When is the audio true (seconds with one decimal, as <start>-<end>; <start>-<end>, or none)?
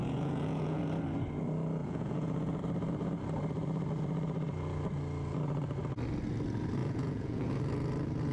0.8-1.8; 2.6-6.8; 7.5-8.3